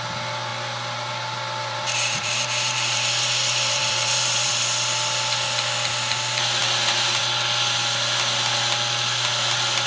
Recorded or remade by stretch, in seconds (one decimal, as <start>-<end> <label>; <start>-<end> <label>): 0.0-1.6 recorded; 1.6-4.5 remade; 4.5-9.9 recorded